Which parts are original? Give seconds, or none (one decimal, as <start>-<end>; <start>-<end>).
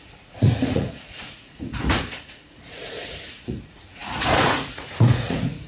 none